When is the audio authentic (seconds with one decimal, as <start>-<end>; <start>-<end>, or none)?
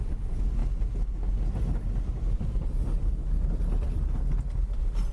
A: 0.0-5.1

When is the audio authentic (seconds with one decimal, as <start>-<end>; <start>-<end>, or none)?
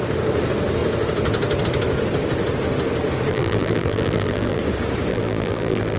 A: 0.0-3.3; 4.6-5.1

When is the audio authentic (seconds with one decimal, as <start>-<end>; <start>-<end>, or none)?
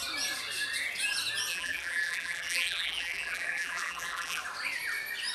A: 0.0-1.5; 4.4-5.3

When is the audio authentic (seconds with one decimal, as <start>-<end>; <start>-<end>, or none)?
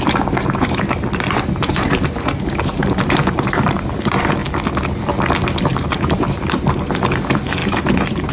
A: 4.4-5.6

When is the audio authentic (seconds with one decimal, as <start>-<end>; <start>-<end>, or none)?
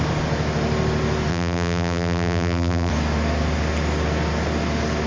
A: 0.0-1.3; 2.9-5.1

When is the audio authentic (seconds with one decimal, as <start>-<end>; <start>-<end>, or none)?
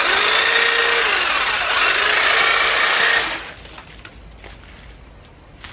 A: 0.0-5.7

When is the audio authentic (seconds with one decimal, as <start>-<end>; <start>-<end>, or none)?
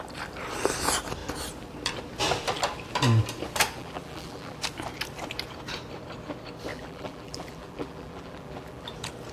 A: 0.0-3.8; 4.6-6.7; 8.9-9.3